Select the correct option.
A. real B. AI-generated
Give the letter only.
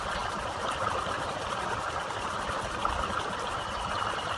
A